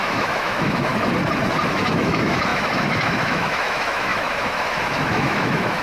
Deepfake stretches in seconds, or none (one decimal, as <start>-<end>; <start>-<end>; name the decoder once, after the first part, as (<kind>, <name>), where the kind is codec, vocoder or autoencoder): 0.0-0.9 (autoencoder, DAC-VAE); 1.7-5.8